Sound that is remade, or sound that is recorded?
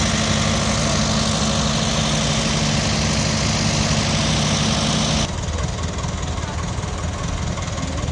recorded